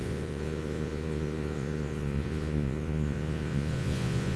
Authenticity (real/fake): fake